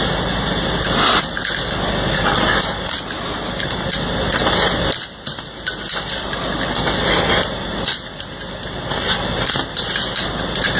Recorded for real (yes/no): yes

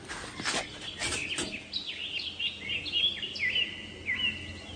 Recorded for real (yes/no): yes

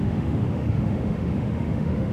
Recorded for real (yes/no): no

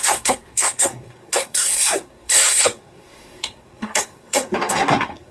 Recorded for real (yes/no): no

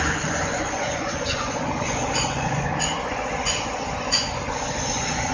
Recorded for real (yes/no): no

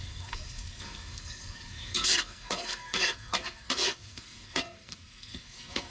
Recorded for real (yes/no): no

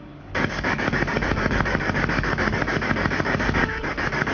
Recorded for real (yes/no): no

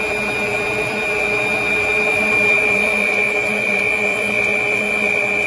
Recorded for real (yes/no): no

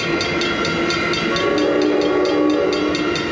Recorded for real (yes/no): yes